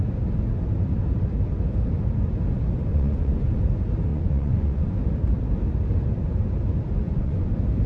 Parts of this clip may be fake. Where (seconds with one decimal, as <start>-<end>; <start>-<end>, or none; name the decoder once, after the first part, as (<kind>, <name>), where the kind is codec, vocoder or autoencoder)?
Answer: 2.9-3.6 (vocoder, Vocos); 4.1-4.9; 6.9-7.5